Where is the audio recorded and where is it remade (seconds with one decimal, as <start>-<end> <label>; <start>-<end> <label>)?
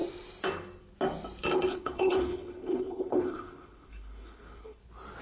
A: 0.0-1.7 recorded; 1.7-4.8 remade; 4.8-5.2 recorded